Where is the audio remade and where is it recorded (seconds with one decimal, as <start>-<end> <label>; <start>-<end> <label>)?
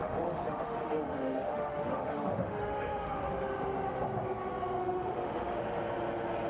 0.0-3.3 remade; 3.3-4.8 recorded; 4.8-5.6 remade; 5.6-6.5 recorded